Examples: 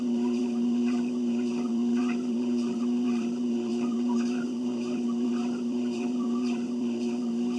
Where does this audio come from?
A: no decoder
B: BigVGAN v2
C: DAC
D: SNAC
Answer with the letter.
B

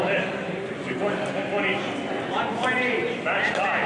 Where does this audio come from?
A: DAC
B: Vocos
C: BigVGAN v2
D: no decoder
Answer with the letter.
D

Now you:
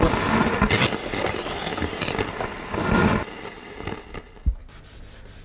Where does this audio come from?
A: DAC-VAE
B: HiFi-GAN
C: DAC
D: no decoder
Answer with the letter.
D